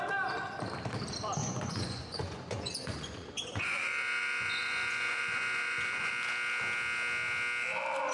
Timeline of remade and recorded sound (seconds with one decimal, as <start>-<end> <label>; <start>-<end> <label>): 0.0-1.4 recorded; 1.4-6.1 remade; 6.1-8.1 recorded